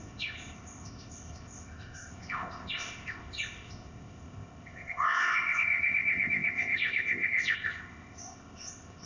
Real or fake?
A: fake